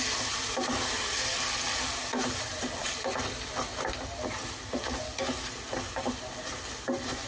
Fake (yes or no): no